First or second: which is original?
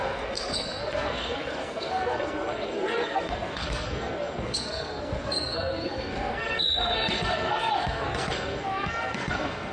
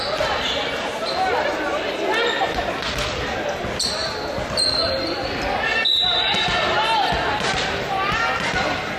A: second